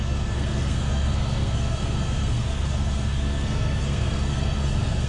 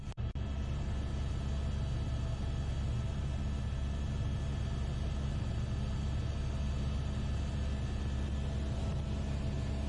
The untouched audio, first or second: second